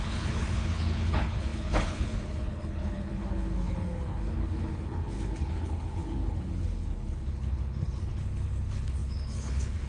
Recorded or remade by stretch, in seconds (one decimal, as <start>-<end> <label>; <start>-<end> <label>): 0.0-9.9 remade